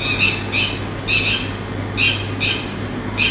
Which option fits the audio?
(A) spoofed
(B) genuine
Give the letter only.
B